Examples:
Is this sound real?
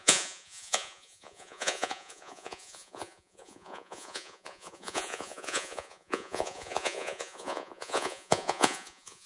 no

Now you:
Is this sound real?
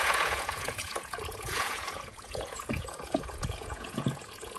no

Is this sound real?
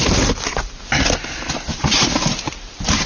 yes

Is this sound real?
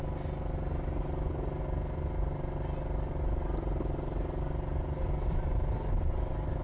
yes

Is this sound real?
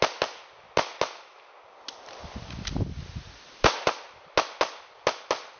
yes